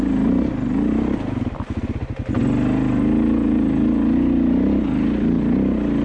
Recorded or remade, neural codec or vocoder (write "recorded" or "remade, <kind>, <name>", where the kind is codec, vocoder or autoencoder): recorded